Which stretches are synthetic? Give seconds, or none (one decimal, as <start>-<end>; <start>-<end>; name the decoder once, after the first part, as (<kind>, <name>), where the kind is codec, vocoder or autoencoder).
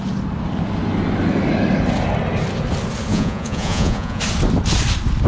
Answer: 3.1-4.2 (vocoder, Vocos)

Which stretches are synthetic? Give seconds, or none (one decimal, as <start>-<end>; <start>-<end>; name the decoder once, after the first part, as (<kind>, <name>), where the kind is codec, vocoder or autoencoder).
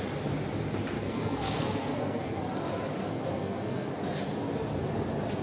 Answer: 1.0-2.4 (codec, SNAC); 3.0-3.9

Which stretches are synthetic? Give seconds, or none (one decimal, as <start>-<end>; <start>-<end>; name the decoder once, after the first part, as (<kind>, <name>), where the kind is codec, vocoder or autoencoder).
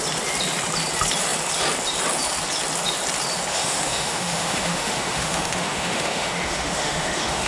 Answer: 3.5-7.5 (autoencoder, DAC-VAE)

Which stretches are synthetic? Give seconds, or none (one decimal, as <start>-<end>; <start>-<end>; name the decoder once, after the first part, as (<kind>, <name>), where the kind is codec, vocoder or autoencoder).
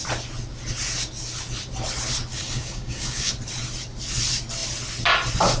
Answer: 2.3-3.3 (codec, DAC)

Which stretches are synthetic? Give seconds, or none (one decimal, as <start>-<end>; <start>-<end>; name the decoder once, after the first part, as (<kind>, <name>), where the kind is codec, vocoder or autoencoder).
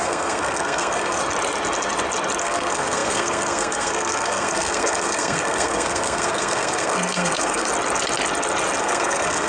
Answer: 0.0-1.2 (codec, SNAC); 2.4-7.7; 8.8-9.5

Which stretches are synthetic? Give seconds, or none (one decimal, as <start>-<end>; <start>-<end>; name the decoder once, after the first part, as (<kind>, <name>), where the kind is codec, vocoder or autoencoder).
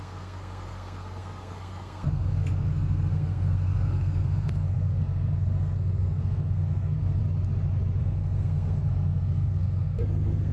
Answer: 0.0-7.2 (codec, SNAC); 8.0-10.5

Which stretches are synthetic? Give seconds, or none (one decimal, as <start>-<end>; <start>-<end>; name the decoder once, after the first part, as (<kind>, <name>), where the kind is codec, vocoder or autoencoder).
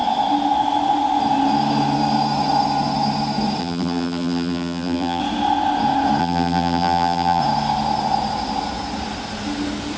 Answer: 3.6-5.2 (vocoder, BigVGAN v2); 6.2-7.4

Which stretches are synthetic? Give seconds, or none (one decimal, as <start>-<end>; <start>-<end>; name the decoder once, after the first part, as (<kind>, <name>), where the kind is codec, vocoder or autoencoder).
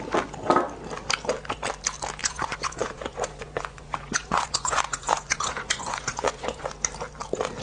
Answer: 2.2-6.7 (vocoder, Vocos)